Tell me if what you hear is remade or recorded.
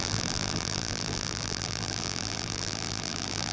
remade